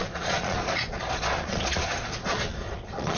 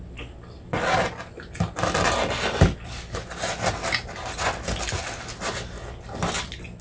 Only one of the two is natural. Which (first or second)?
second